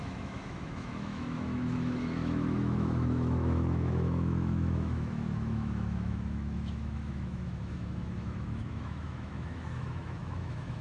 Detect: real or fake fake